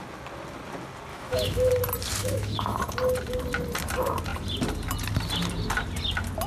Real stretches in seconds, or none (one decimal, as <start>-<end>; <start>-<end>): 0.0-1.1; 1.7-2.2; 2.8-6.5